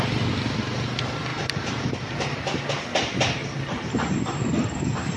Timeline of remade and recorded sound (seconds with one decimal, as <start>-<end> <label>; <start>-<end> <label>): 0.0-1.3 recorded; 1.3-2.6 remade; 2.6-5.2 recorded